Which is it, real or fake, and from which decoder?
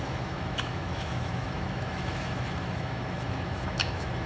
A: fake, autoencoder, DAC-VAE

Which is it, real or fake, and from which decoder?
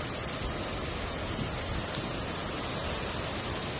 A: real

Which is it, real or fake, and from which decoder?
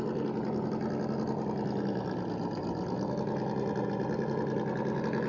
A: real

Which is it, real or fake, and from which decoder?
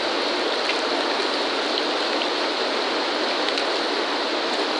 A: real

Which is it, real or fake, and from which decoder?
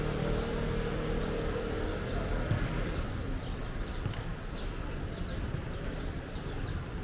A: real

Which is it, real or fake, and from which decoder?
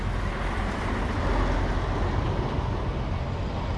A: real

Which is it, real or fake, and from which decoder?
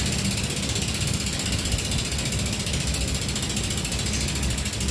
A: real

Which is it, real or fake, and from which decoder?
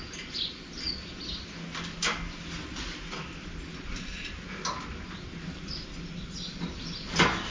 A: real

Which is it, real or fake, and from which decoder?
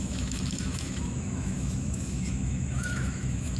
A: fake, autoencoder, DAC-VAE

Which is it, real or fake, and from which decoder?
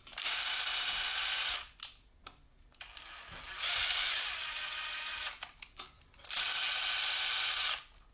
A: real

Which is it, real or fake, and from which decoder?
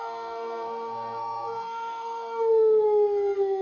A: fake, codec, SNAC